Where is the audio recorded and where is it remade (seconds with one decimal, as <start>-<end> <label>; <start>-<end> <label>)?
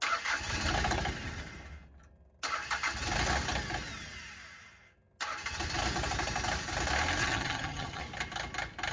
0.0-7.2 recorded; 7.2-8.0 remade; 8.0-8.9 recorded